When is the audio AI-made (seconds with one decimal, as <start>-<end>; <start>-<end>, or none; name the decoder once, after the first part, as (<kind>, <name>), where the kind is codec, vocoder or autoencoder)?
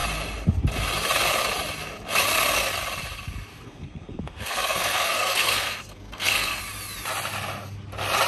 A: 3.5-6.6 (codec, SNAC)